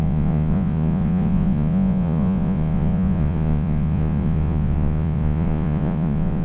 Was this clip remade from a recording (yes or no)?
yes